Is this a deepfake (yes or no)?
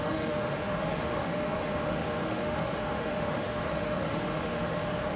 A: yes